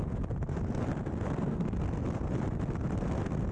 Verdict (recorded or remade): recorded